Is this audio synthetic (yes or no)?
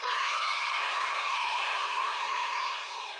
yes